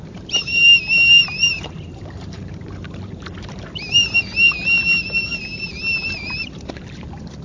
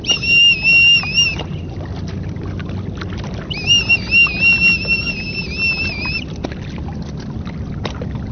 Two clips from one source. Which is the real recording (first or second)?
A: second